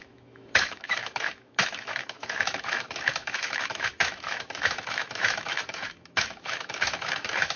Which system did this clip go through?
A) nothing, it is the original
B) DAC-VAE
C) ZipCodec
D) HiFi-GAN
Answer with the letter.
B